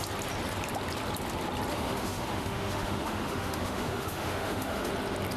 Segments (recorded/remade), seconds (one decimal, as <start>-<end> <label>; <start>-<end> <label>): 0.0-1.7 recorded; 1.7-4.9 remade; 4.9-5.4 recorded